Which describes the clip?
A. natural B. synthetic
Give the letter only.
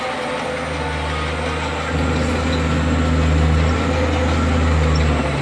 A